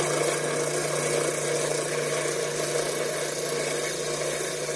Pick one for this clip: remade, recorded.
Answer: recorded